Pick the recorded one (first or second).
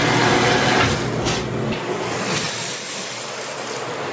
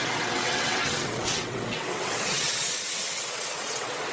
first